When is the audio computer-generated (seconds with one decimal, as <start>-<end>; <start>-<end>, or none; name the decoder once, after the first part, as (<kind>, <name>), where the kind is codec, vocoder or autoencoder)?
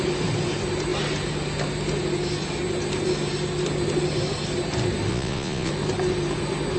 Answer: 5.1-5.7 (vocoder, Vocos)